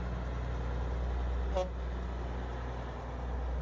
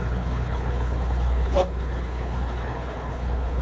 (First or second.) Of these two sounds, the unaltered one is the first